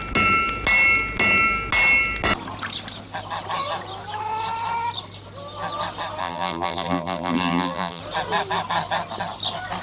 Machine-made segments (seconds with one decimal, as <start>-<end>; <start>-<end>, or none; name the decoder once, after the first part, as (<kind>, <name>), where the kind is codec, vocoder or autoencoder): 6.2-8.0 (vocoder, BigVGAN v2)

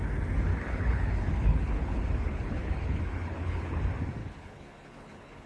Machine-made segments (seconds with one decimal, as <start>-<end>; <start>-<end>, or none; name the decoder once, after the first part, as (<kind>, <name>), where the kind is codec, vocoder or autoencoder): 0.5-3.8 (codec, HILCodec); 4.2-5.5

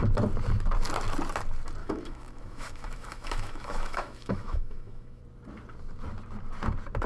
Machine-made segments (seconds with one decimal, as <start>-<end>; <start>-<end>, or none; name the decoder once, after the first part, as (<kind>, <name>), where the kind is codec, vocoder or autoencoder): 1.8-5.2 (autoencoder, DAC-VAE)

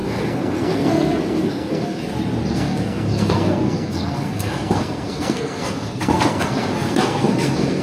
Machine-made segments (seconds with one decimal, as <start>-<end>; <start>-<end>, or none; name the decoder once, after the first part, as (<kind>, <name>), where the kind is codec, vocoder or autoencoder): 0.0-2.0 (codec, SNAC); 2.5-7.8

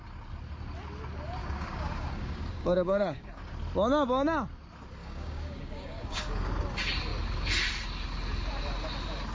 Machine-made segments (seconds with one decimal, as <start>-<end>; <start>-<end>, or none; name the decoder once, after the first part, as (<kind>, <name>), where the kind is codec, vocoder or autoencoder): 1.4-3.4 (codec, DAC); 5.0-6.5